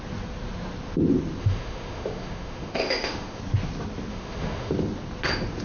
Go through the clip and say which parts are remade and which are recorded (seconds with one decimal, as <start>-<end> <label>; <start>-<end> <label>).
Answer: 0.0-1.4 recorded; 1.4-3.4 remade; 3.4-4.1 recorded; 4.1-4.7 remade; 4.7-5.6 recorded